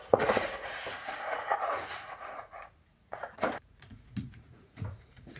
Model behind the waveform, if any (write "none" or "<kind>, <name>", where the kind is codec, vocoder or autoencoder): vocoder, Vocos